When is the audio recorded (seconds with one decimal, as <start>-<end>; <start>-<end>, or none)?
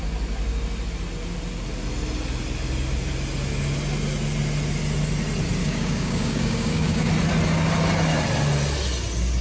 0.0-5.6; 7.1-9.4